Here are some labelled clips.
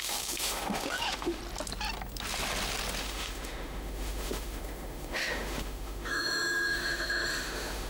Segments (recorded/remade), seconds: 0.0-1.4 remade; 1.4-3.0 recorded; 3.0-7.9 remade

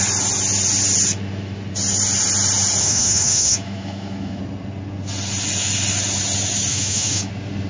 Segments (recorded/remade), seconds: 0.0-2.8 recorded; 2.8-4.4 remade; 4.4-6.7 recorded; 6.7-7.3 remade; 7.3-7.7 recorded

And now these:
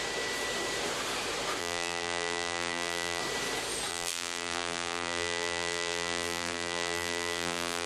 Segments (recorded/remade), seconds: 0.0-1.6 recorded; 1.6-3.2 remade; 3.2-3.9 recorded; 3.9-7.9 remade

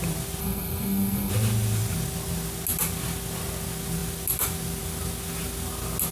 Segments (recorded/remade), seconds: 0.0-0.4 recorded; 0.4-1.3 remade; 1.3-6.1 recorded